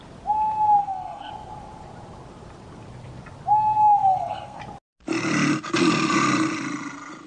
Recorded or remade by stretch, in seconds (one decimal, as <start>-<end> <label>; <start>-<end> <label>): 0.0-0.8 recorded; 0.8-1.3 remade; 1.3-3.8 recorded; 3.8-4.6 remade; 4.6-7.3 recorded